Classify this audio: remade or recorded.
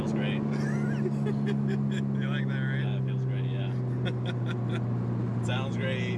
recorded